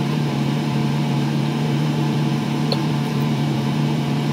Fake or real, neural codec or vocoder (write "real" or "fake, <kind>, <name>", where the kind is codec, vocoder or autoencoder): fake, vocoder, BigVGAN v2